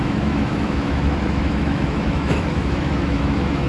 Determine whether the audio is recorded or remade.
remade